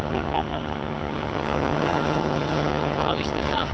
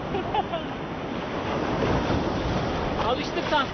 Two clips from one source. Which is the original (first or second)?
second